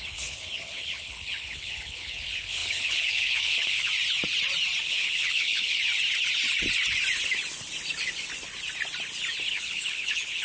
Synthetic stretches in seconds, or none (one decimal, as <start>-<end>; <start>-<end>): 0.0-3.9; 4.8-5.8; 9.5-10.4